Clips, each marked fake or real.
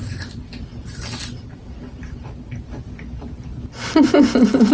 fake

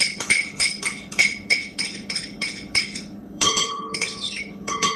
fake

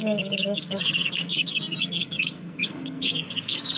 fake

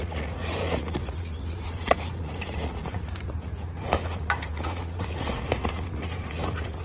fake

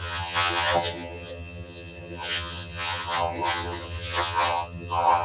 fake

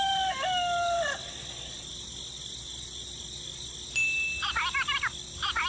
real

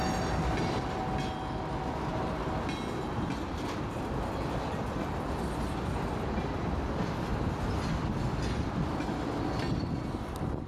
real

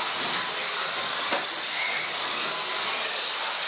real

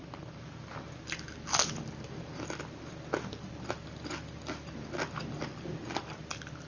real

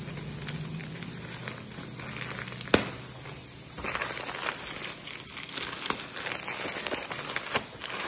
real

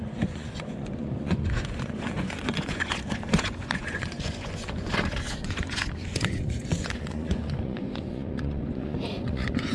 fake